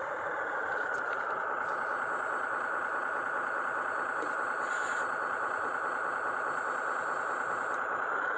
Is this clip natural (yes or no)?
yes